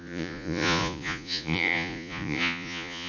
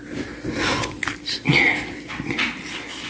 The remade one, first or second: first